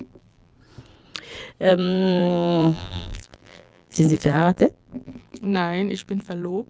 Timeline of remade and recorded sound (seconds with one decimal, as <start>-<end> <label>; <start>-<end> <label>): 0.0-0.5 remade; 0.5-1.7 recorded; 1.7-6.7 remade